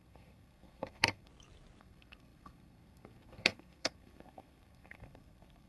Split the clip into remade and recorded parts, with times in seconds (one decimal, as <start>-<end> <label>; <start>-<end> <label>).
0.0-1.3 remade; 1.3-1.8 recorded; 1.8-5.7 remade